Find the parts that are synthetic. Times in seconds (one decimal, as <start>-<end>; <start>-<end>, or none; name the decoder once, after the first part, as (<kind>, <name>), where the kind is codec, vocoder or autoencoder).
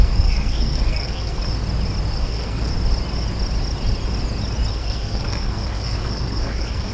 0.0-1.4 (codec, SNAC); 2.2-2.7; 4.7-6.9